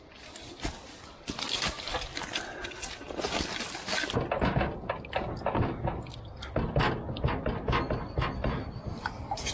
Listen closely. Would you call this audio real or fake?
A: real